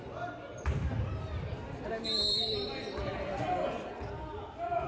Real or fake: real